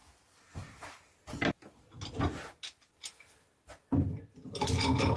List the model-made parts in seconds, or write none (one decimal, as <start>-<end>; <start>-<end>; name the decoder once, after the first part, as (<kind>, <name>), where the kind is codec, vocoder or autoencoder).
none